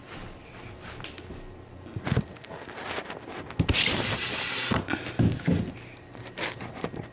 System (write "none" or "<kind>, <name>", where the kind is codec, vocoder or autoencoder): none